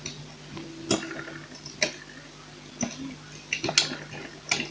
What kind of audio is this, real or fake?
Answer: real